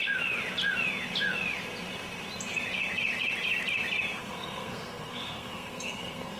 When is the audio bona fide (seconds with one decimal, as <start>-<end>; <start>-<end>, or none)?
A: 0.0-4.2